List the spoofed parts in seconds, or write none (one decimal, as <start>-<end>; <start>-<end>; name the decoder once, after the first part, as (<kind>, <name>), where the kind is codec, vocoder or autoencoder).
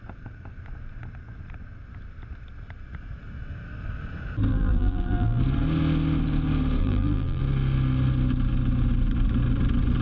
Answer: 4.5-5.4 (vocoder, BigVGAN v2); 6.8-7.4